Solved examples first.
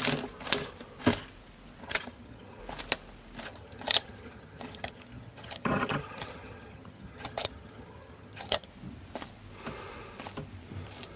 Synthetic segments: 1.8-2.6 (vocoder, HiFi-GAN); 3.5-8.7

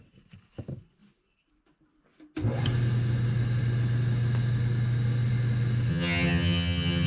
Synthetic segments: 5.9-7.1 (vocoder, HiFi-GAN)

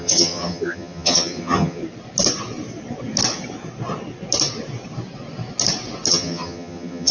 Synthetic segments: 0.0-1.8 (vocoder, HiFi-GAN); 6.1-7.1

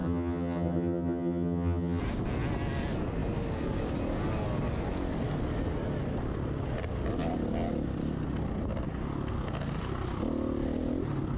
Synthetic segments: 0.0-2.0 (vocoder, HiFi-GAN)

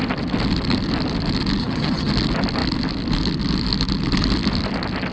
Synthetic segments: 1.6-2.1 (vocoder, HiFi-GAN)

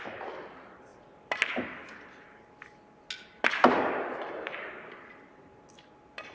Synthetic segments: none

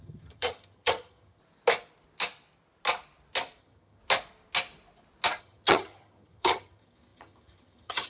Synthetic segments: 0.0-1.4 (vocoder, HiFi-GAN); 3.6-4.0; 5.4-8.1

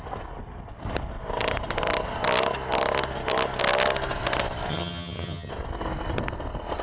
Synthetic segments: 4.7-5.5 (vocoder, HiFi-GAN)